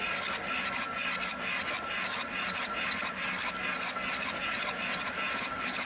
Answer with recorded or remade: recorded